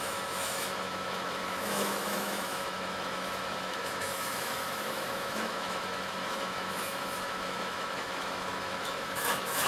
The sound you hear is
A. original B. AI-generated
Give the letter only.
B